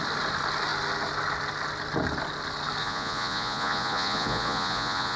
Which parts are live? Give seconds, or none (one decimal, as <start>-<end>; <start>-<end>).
0.0-2.8